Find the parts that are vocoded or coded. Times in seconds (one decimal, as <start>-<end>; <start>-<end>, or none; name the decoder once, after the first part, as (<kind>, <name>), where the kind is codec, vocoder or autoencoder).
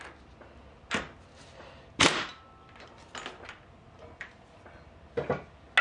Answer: none